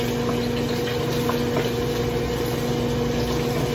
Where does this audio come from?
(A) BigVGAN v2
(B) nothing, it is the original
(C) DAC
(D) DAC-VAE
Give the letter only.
B